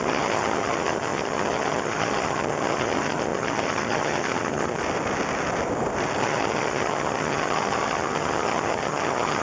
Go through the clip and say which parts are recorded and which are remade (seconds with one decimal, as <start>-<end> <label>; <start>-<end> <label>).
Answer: 0.0-4.8 remade; 4.8-6.2 recorded; 6.2-9.4 remade